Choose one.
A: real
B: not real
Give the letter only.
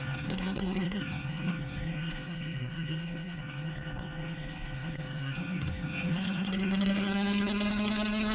B